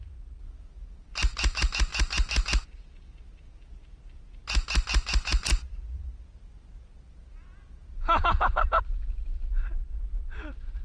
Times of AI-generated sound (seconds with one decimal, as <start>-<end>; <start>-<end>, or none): none